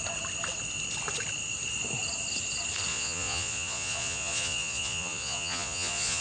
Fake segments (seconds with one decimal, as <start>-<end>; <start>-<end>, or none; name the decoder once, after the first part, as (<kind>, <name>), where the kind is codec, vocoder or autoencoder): 2.9-6.2 (vocoder, Vocos)